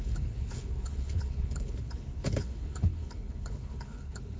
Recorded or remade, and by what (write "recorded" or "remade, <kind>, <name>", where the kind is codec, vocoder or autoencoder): remade, codec, HILCodec